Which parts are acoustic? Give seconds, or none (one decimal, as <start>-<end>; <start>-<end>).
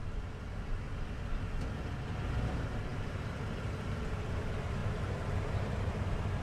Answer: 0.0-2.5